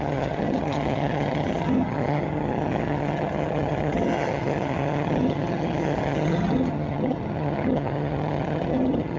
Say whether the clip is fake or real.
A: fake